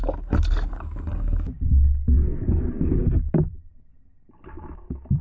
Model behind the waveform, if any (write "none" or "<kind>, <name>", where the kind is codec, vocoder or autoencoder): none